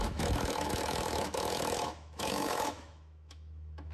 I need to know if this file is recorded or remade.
remade